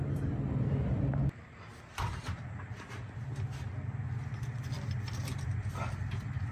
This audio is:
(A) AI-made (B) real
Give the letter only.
B